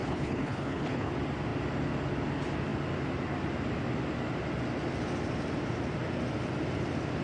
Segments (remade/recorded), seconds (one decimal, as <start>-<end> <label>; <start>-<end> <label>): 0.0-1.1 remade; 1.1-7.2 recorded